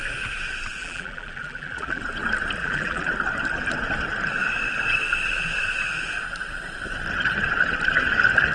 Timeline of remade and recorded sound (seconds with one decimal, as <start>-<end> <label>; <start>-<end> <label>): 0.0-0.8 recorded; 0.8-2.0 remade; 2.0-2.6 recorded; 2.6-3.1 remade; 3.1-8.5 recorded